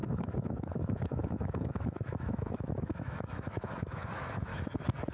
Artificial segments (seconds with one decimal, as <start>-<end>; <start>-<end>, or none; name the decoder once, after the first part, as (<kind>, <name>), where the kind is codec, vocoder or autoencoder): 0.0-4.5 (autoencoder, DAC-VAE)